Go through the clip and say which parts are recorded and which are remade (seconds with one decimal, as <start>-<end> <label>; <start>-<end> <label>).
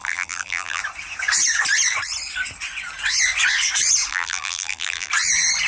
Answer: 0.0-0.8 remade; 0.8-4.1 recorded; 4.1-5.1 remade; 5.1-5.7 recorded